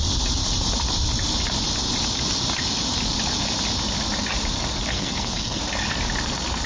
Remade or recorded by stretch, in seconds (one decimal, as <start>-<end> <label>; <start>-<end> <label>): 0.0-4.9 recorded; 4.9-5.6 remade; 5.6-6.7 recorded